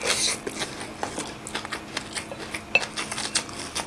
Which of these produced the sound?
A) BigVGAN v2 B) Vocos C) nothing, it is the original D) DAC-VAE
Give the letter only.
C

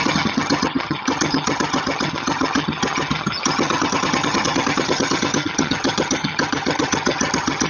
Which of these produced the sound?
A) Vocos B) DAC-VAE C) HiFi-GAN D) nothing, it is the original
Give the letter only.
C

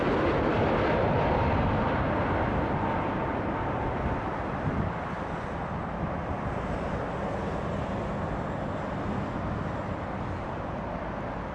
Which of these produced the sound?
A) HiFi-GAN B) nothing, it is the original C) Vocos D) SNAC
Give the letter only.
B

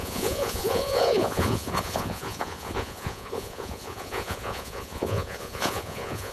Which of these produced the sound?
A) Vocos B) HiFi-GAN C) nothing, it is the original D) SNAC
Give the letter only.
A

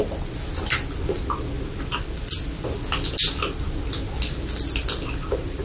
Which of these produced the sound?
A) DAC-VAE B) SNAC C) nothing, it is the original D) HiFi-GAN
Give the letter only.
C